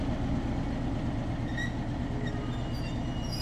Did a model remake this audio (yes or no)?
no